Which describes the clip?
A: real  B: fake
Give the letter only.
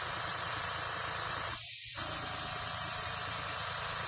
B